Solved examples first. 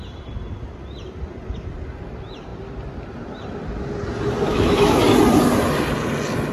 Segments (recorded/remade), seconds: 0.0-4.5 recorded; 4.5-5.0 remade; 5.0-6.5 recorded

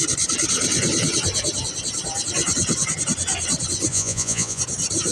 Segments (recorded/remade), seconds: 0.0-3.9 recorded; 3.9-4.6 remade; 4.6-5.1 recorded

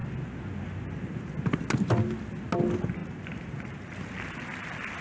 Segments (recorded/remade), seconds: 0.0-3.0 recorded; 3.0-3.9 remade; 3.9-5.0 recorded

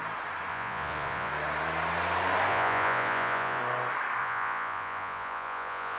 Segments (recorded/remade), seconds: 0.0-0.5 recorded; 0.5-1.3 remade; 1.3-2.5 recorded; 2.5-3.6 remade; 3.6-4.2 recorded; 4.2-6.0 remade

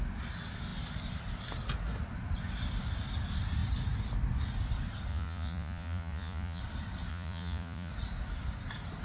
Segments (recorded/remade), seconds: 0.0-5.1 recorded; 5.1-6.6 remade; 6.6-7.1 recorded; 7.1-7.9 remade; 7.9-9.0 recorded